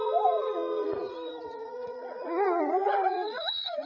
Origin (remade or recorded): remade